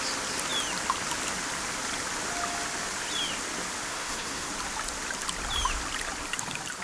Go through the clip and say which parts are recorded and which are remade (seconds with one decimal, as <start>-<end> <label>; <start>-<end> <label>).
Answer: 0.0-3.9 recorded; 3.9-4.5 remade; 4.5-6.8 recorded